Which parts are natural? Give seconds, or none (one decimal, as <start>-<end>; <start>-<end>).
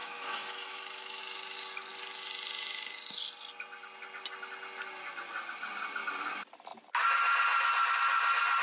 1.2-8.6